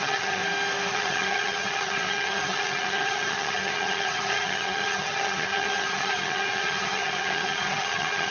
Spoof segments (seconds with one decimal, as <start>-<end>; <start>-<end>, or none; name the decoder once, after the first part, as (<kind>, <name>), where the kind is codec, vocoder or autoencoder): 0.0-0.4 (vocoder, HiFi-GAN); 0.9-8.3